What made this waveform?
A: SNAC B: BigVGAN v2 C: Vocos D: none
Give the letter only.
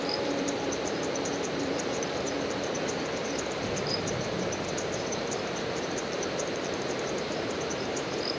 B